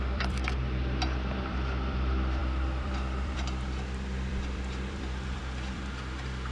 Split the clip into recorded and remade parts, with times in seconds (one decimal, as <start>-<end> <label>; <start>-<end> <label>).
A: 0.0-6.5 remade